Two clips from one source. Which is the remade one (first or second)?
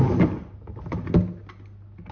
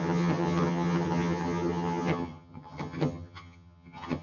second